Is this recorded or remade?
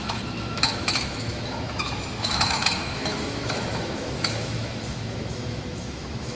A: remade